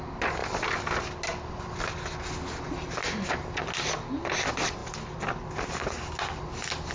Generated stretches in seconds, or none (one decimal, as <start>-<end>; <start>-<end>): none